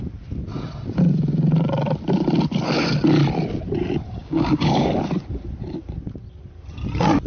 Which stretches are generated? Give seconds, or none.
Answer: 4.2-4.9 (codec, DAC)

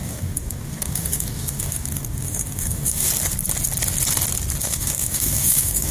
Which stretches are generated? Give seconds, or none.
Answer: 0.0-3.1 (codec, DAC); 4.6-5.9

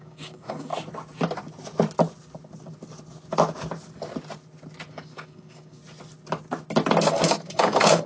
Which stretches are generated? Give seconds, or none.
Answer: 0.0-0.7 (codec, DAC); 4.9-5.8; 7.1-8.1

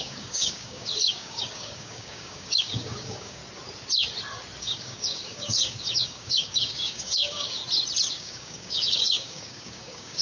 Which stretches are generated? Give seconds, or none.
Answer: 0.0-3.4 (codec, DAC); 4.6-7.6; 8.1-10.2